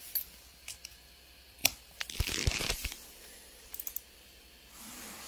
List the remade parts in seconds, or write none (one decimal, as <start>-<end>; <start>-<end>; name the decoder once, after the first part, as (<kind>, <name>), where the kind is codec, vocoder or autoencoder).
1.6-3.8 (vocoder, BigVGAN v2)

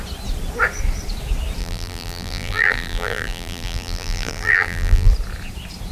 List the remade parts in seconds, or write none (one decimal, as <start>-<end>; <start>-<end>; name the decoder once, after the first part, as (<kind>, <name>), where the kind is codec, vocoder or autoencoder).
1.6-5.1 (vocoder, BigVGAN v2)

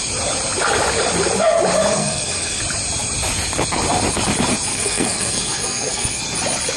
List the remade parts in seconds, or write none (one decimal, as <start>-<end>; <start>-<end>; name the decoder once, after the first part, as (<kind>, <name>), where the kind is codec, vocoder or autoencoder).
1.9-2.6 (codec, SNAC); 4.7-6.2

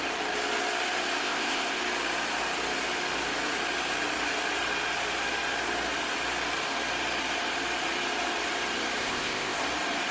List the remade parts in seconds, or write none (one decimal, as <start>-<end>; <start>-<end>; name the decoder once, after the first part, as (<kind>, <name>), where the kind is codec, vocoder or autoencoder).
1.2-1.8 (codec, ZipCodec); 9.0-9.6